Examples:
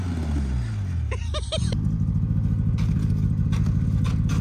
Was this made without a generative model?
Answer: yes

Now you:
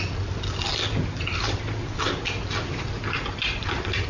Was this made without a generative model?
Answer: yes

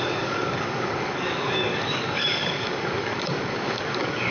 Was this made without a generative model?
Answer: no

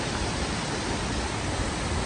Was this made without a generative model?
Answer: yes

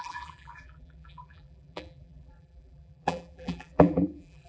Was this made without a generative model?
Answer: no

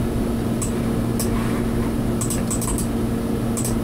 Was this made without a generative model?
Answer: yes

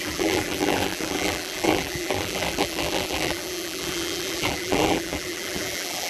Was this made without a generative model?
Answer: no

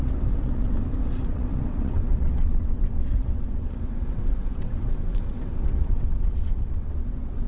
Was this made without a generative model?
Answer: no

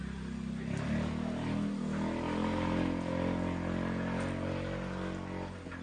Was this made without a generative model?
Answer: yes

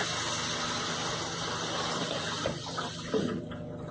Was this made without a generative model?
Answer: yes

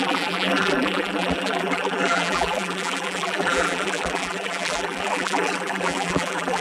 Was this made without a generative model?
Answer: no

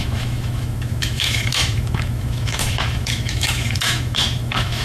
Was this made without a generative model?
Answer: no